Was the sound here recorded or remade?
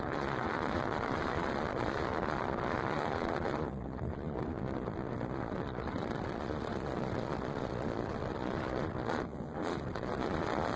remade